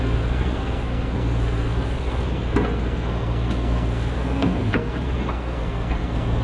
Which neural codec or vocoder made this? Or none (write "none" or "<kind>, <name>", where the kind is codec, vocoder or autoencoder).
codec, SNAC